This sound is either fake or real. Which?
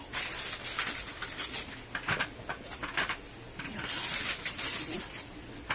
real